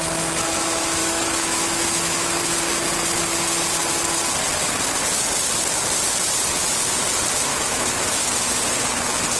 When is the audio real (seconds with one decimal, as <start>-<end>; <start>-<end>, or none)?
0.0-1.0; 2.4-7.5; 8.2-9.4